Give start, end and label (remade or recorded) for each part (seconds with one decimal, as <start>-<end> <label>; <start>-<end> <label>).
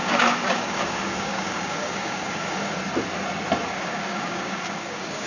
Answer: 0.0-2.7 remade; 2.7-3.7 recorded; 3.7-5.3 remade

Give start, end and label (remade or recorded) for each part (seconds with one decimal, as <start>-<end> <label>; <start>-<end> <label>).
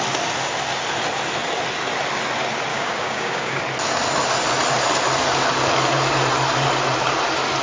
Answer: 0.0-2.7 recorded; 2.7-3.6 remade; 3.6-7.6 recorded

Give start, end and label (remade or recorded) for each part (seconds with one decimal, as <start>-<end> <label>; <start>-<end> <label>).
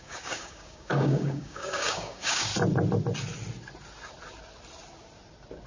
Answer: 0.0-2.5 remade; 2.5-5.7 recorded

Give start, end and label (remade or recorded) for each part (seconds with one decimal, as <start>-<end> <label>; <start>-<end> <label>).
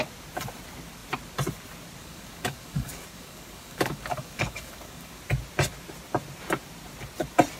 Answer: 0.0-2.0 recorded; 2.0-5.2 remade; 5.2-7.6 recorded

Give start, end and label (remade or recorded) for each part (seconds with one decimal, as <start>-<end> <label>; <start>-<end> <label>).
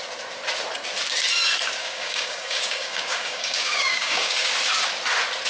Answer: 0.0-1.8 recorded; 1.8-4.5 remade; 4.5-5.5 recorded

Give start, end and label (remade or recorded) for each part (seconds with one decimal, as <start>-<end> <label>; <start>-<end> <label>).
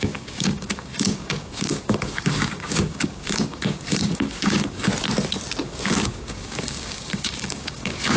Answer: 0.0-4.9 remade; 4.9-5.6 recorded; 5.6-8.2 remade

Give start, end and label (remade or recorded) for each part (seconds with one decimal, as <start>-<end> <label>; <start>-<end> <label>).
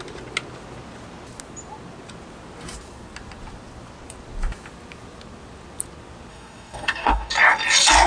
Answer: 0.0-6.3 recorded; 6.3-7.3 remade; 7.3-8.1 recorded